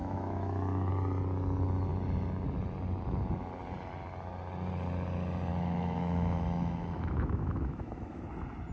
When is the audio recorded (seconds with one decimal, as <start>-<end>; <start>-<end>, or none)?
0.9-5.5; 8.2-8.7